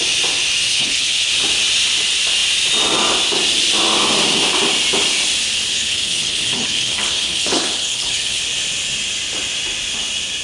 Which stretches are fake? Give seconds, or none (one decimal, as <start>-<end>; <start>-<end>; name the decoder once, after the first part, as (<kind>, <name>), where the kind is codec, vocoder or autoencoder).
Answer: 0.7-1.3 (codec, HILCodec); 5.8-8.4